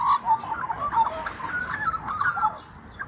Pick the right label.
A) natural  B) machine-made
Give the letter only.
A